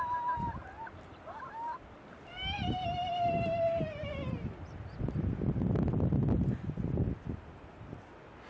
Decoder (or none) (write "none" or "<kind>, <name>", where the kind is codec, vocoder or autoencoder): none